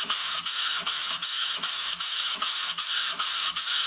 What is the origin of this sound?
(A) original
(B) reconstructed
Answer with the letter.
B